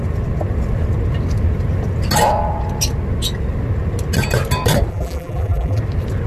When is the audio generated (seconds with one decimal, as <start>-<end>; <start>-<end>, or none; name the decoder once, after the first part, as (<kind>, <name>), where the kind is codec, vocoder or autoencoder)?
4.9-5.8 (vocoder, BigVGAN v2)